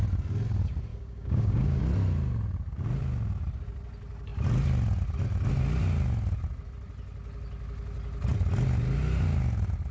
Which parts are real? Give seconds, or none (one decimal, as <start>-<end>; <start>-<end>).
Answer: 0.0-0.9; 1.8-9.9